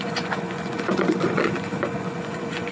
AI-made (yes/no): yes